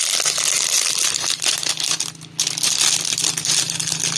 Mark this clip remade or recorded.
recorded